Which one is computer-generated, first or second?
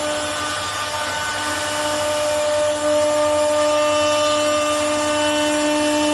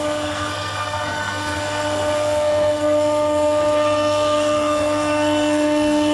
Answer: second